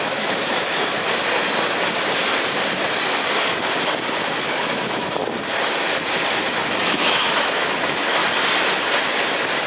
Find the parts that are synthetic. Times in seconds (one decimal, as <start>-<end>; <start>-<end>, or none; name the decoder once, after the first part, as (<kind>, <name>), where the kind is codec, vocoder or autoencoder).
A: 0.0-1.0 (autoencoder, DAC-VAE); 4.3-5.2; 6.5-8.2